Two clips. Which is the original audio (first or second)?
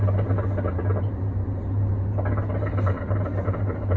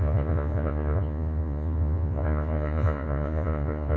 first